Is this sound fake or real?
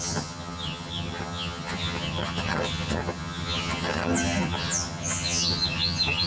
fake